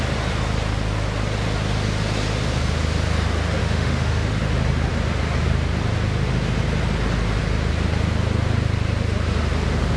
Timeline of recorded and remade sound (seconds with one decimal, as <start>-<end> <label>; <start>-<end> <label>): 0.0-3.6 recorded; 3.6-4.4 remade; 4.4-10.0 recorded